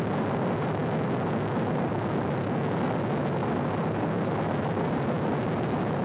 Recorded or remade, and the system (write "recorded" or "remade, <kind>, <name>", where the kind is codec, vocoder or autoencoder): recorded